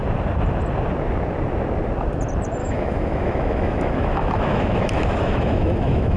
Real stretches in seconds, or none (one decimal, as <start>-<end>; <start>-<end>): 0.0-2.6